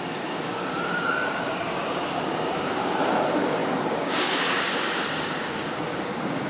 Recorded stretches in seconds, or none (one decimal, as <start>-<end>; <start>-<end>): none